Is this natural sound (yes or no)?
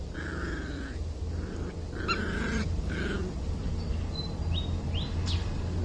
yes